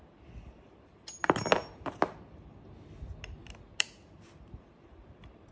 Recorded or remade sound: recorded